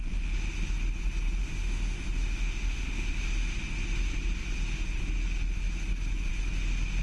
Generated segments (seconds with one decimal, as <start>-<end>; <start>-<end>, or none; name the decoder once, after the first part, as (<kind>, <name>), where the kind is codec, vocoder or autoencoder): 1.4-3.1 (autoencoder, DAC-VAE)